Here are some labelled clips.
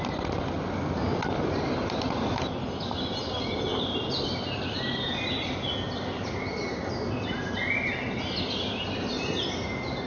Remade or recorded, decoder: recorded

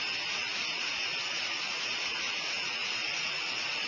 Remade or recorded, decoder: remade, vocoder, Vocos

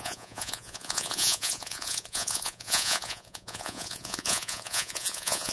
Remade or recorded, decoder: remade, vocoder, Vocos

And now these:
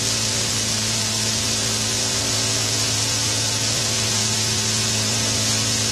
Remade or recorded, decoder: remade, vocoder, BigVGAN v2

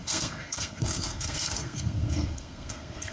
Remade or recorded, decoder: remade, codec, SNAC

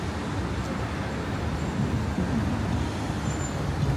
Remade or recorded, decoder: recorded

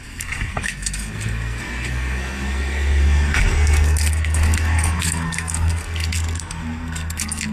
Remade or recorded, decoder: remade, codec, SNAC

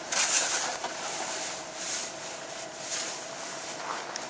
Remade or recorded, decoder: recorded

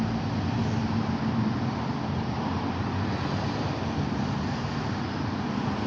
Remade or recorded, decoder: recorded